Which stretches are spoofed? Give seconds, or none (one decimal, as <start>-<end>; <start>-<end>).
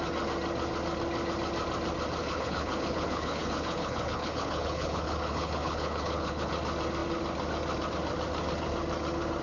2.2-6.5